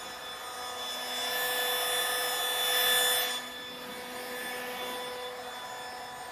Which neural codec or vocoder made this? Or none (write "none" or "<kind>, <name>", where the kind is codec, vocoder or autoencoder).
none